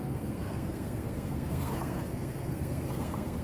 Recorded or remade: remade